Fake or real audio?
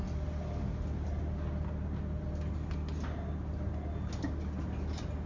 real